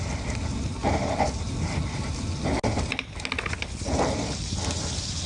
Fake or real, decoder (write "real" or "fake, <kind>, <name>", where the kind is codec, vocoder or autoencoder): real